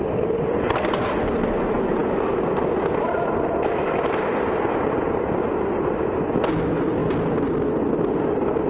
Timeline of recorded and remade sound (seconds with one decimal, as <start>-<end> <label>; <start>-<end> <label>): 0.0-8.7 recorded